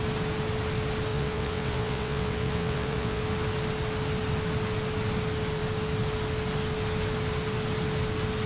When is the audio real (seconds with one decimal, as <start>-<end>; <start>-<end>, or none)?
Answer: 0.0-1.1; 3.2-8.5